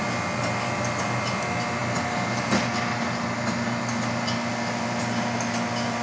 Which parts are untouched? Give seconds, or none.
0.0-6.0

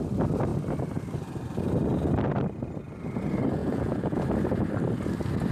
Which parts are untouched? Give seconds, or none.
0.0-3.6; 4.2-5.5

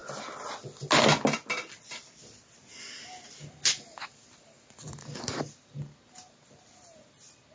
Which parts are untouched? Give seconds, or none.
0.0-7.5

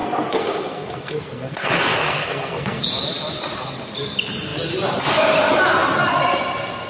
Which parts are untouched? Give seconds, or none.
2.9-6.9

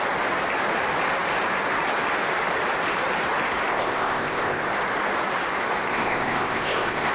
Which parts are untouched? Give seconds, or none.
0.0-3.7; 4.6-5.9